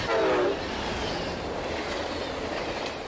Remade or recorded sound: recorded